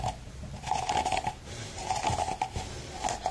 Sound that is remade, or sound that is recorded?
recorded